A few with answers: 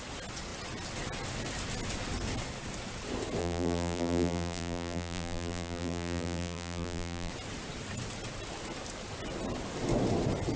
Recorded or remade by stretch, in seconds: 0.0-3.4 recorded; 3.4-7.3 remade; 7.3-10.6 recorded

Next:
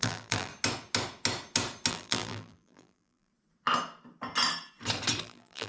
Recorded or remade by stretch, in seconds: 0.0-0.5 remade; 0.5-1.9 recorded; 1.9-3.3 remade; 3.3-5.2 recorded; 5.2-5.7 remade

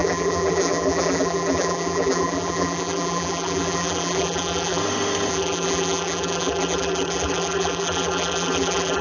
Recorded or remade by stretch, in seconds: 0.0-4.8 remade; 4.8-5.3 recorded; 5.3-9.0 remade

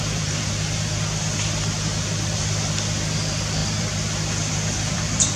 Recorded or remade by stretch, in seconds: 0.0-5.4 remade

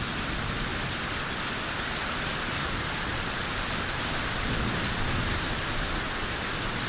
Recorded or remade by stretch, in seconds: 0.0-2.3 recorded; 2.3-4.3 remade; 4.3-6.9 recorded

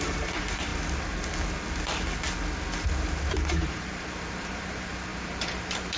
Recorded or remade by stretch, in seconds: 0.0-0.7 remade; 0.7-3.3 recorded; 3.3-6.0 remade